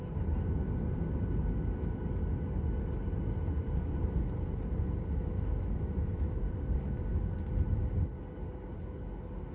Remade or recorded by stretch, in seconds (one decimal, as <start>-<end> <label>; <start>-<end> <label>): 0.0-3.6 recorded; 3.6-7.1 remade; 7.1-9.5 recorded